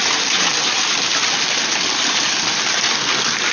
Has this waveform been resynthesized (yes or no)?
no